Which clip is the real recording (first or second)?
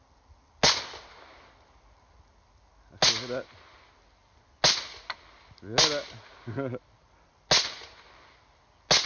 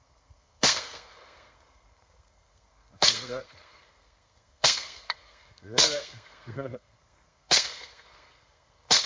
first